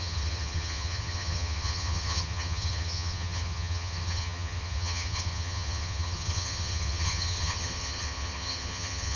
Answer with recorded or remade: remade